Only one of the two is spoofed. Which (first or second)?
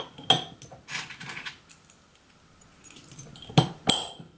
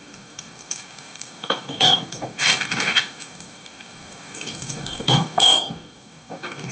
second